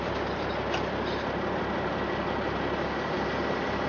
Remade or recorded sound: recorded